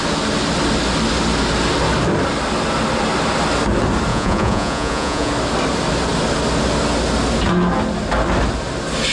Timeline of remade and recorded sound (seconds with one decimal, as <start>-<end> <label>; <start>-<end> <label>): 0.0-4.1 recorded; 4.1-5.3 remade; 5.3-9.1 recorded